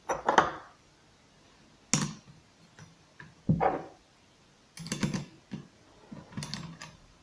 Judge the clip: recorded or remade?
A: recorded